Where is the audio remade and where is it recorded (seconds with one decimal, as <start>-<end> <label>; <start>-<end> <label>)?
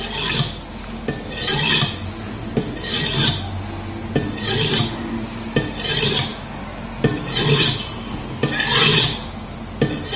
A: 0.0-10.2 recorded